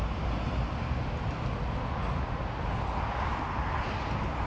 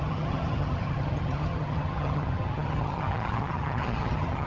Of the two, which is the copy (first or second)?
second